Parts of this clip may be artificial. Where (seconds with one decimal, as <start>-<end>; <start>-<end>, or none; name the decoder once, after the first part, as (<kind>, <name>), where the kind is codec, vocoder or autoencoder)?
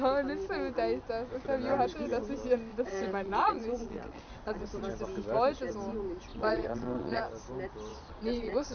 2.7-4.6 (vocoder, Vocos); 6.3-7.2; 7.9-8.7